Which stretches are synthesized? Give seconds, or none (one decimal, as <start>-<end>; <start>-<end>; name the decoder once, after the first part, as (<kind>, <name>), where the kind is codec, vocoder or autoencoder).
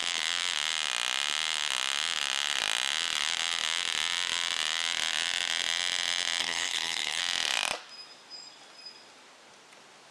6.4-7.2 (codec, SNAC)